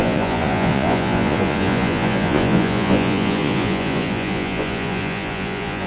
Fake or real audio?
fake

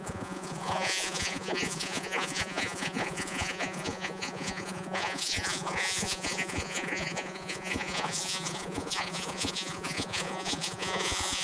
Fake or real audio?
fake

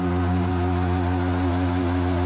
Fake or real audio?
real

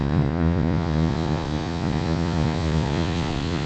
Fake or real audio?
fake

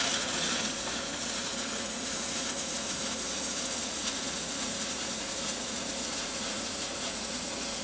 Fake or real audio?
fake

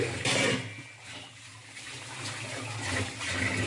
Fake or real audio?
real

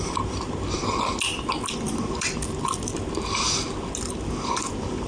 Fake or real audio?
real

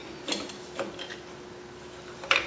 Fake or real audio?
real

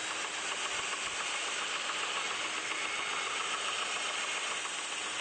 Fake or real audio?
real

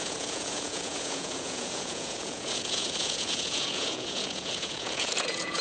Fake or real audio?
fake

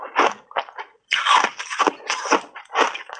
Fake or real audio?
real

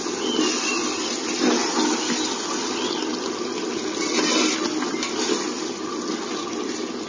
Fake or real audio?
real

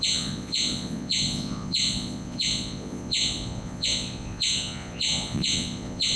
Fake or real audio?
fake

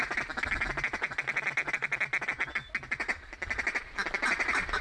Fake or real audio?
real